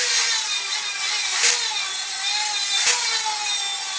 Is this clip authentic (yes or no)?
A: yes